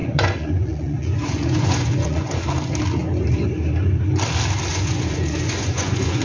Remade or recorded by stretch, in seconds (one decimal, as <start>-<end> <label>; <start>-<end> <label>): 0.0-2.4 remade; 2.4-4.7 recorded; 4.7-6.2 remade